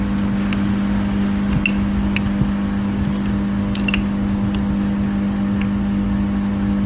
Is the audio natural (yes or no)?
yes